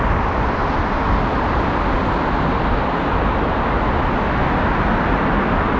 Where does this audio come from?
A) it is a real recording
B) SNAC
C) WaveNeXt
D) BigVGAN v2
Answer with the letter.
A